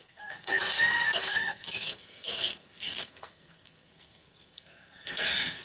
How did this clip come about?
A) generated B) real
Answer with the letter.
A